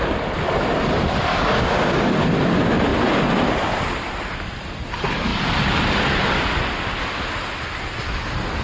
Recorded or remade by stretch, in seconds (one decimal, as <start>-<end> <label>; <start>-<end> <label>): 0.0-1.3 recorded; 1.3-2.1 remade; 2.1-8.6 recorded